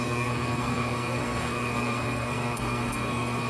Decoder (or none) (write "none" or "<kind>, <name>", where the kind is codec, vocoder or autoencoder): codec, SNAC